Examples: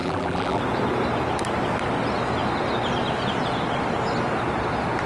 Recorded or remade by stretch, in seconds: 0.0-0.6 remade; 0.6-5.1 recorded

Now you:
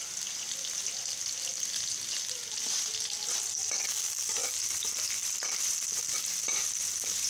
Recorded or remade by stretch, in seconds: 0.0-5.2 recorded; 5.2-7.3 remade

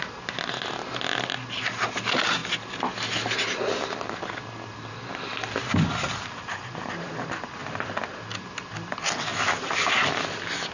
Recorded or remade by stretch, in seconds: 0.0-10.7 recorded

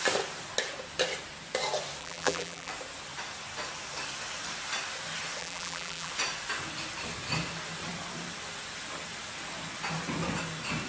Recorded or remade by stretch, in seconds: 0.0-2.0 recorded; 2.0-2.7 remade; 2.7-5.4 recorded; 5.4-6.1 remade; 6.1-10.9 recorded

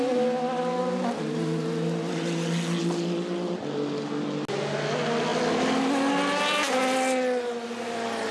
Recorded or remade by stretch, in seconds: 0.0-8.3 recorded